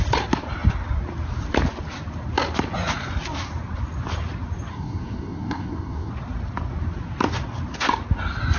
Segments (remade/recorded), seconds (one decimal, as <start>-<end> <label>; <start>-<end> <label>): 0.0-4.7 recorded; 4.7-6.1 remade; 6.1-8.6 recorded